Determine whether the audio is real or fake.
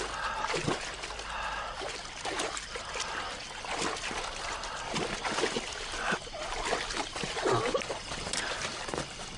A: real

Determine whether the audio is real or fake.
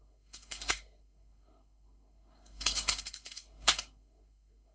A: fake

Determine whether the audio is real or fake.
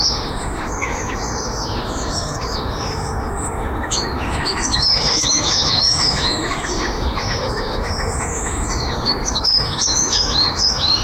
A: fake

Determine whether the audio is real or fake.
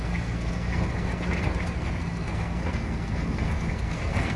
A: fake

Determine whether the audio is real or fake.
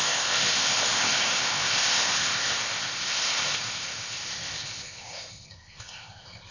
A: fake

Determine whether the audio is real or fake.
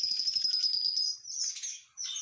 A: fake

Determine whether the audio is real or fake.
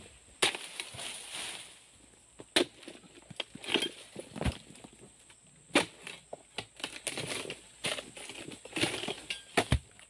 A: real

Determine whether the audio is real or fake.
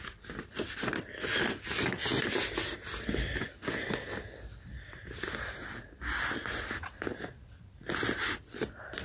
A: real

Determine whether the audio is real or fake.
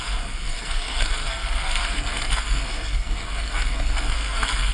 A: fake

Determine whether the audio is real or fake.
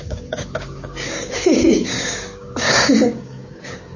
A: fake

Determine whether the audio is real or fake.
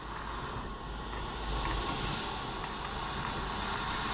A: real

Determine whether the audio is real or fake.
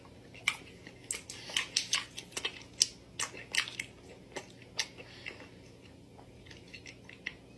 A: real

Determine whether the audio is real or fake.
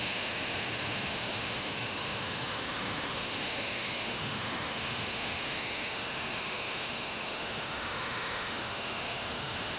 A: fake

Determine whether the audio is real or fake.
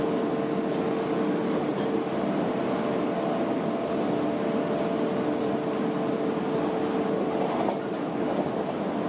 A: real